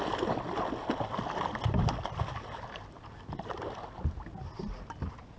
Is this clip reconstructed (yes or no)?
no